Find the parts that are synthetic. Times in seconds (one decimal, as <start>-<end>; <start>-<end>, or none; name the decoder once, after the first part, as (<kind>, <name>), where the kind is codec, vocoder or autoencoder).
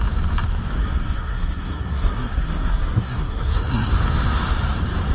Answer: 0.8-3.9 (codec, SNAC)